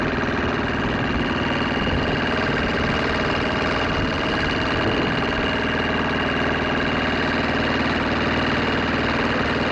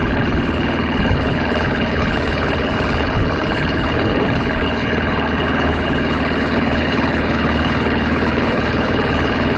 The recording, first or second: first